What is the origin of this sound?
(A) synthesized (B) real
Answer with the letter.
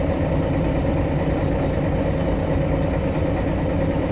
B